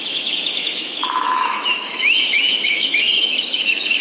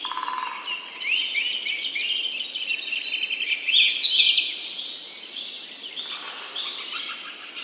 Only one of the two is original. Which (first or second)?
second